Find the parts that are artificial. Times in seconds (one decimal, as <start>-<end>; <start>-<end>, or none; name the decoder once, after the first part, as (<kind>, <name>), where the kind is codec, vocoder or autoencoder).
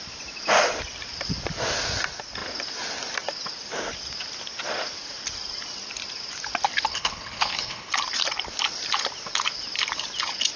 6.9-7.9 (codec, HILCodec)